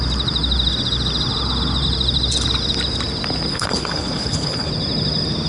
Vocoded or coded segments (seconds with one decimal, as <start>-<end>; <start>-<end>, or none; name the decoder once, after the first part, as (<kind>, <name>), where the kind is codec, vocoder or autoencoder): 3.5-4.7 (codec, HILCodec)